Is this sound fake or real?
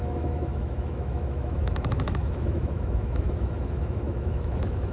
fake